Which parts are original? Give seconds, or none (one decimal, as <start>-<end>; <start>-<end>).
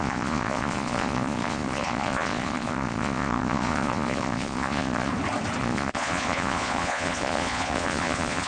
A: 5.1-5.6